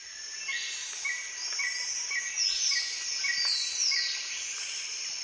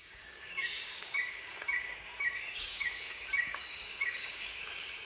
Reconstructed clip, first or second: second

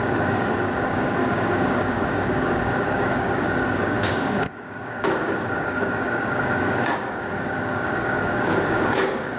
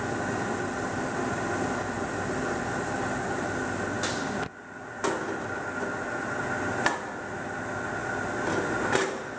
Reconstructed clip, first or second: first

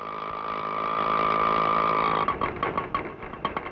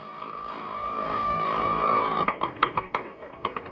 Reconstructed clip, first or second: second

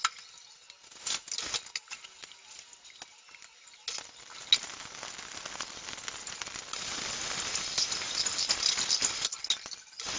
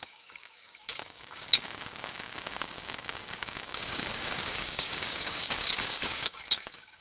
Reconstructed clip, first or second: second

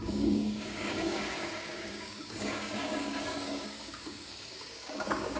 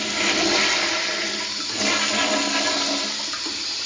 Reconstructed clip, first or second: first